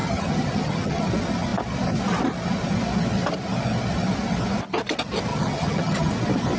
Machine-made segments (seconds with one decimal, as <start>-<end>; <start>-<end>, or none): 0.0-1.1; 5.3-6.1